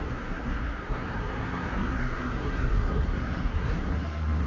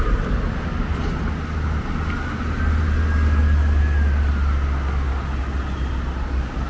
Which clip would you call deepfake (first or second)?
first